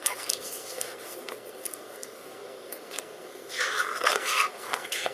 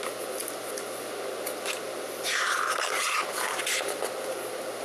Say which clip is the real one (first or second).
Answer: second